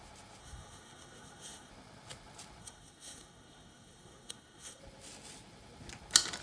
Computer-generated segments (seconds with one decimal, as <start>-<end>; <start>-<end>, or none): 0.4-1.7; 2.6-4.8